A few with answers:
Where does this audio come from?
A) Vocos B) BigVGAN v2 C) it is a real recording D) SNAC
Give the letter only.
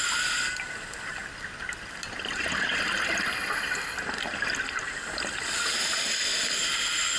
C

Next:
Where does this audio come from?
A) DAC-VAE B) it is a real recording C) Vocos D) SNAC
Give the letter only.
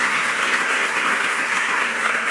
D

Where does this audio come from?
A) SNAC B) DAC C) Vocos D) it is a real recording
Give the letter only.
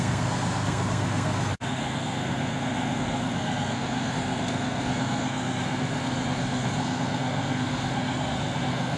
A